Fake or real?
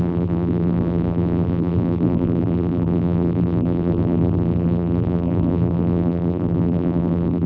fake